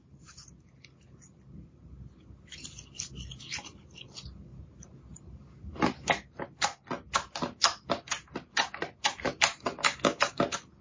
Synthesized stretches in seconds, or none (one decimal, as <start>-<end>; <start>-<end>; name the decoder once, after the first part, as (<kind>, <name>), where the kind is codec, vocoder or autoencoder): 9.8-10.4 (codec, DAC)

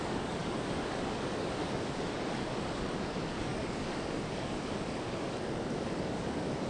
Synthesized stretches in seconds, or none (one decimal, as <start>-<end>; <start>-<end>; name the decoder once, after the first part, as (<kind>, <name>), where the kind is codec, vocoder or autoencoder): 0.0-6.7 (codec, DAC)

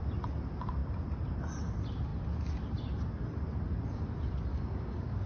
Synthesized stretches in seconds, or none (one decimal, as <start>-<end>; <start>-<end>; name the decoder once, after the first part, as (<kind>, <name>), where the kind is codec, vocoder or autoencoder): 4.5-5.3 (codec, DAC)

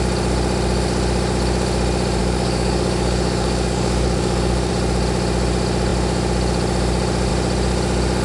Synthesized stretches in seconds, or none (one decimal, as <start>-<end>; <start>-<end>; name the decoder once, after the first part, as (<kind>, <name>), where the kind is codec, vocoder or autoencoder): 2.2-4.7 (codec, DAC)

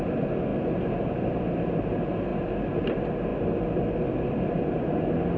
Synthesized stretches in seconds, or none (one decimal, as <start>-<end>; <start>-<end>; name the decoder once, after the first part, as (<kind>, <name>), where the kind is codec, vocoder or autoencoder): none

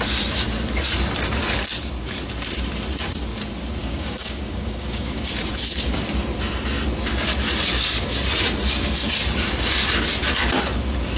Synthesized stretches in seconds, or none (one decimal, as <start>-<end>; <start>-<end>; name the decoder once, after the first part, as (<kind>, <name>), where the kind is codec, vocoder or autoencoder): 3.8-5.3 (codec, DAC)

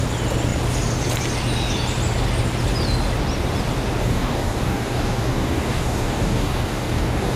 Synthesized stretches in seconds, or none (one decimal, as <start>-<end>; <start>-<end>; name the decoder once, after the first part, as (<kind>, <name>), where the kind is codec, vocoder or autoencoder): 4.0-7.4 (codec, DAC)